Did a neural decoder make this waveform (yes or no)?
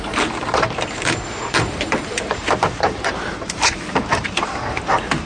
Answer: yes